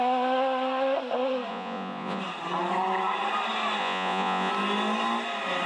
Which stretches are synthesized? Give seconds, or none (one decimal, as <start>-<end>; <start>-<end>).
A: 1.5-2.2; 3.8-4.5